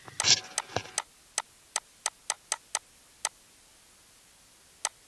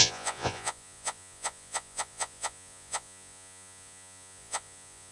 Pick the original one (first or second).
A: first